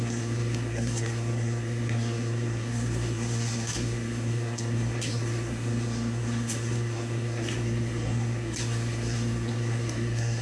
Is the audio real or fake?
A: fake